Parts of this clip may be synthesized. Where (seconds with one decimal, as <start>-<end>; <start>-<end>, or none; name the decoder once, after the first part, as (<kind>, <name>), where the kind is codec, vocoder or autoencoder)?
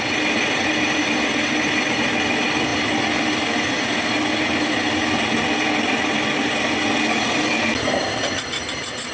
none